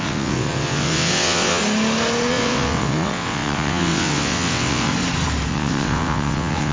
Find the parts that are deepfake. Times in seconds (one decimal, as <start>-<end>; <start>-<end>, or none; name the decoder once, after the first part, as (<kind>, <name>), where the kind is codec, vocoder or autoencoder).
0.0-1.6 (vocoder, WaveNeXt); 2.3-4.9; 5.5-6.7